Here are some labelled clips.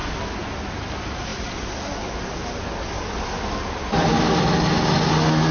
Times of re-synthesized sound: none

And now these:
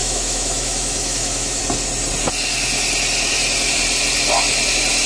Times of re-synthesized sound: 0.0-1.6 (autoencoder, DAC-VAE)

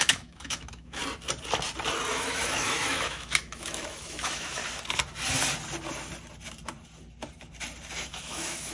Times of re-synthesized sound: 0.0-1.0 (autoencoder, DAC-VAE); 2.1-4.6; 7.9-8.7

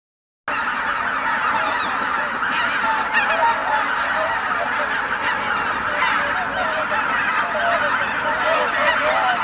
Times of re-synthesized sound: none

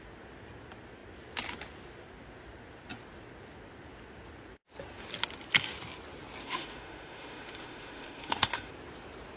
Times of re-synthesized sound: 6.4-8.7 (autoencoder, DAC-VAE)

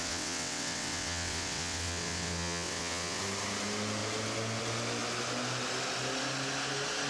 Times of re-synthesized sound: 0.0-3.2 (vocoder, WaveNeXt)